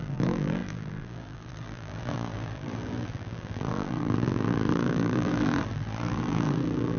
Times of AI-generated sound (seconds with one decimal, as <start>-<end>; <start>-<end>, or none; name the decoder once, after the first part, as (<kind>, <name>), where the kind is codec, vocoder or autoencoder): 0.0-7.0 (vocoder, BigVGAN v2)